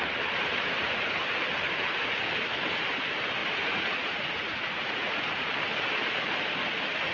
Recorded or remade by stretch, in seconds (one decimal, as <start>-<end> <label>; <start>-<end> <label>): 0.0-0.5 recorded; 0.5-1.4 remade; 1.4-3.4 recorded; 3.4-5.5 remade; 5.5-7.1 recorded